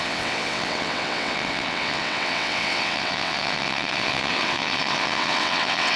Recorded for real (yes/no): no